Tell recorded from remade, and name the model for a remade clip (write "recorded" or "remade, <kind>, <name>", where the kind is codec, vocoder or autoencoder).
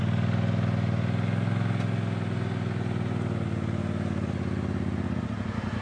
recorded